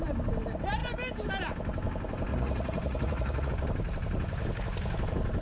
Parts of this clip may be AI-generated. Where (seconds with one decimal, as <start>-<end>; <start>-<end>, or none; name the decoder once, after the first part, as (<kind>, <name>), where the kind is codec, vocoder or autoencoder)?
2.3-3.5 (vocoder, Vocos)